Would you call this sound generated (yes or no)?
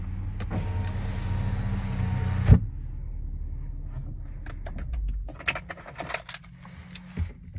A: no